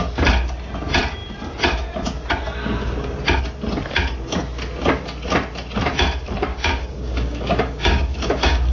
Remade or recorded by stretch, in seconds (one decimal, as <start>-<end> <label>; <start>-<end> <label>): 0.0-6.5 recorded; 6.5-8.7 remade